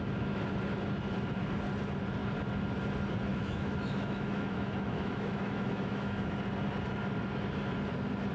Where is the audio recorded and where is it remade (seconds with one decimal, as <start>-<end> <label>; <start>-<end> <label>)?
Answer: 0.0-3.3 recorded; 3.3-6.4 remade; 6.4-8.3 recorded